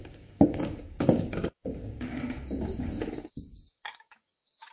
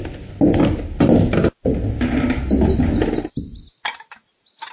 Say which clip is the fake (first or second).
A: first